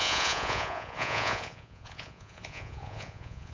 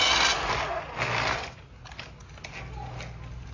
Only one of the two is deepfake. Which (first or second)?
first